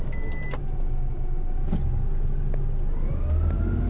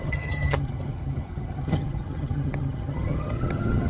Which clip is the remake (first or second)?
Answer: second